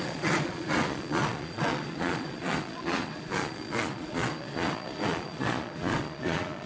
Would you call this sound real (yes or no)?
no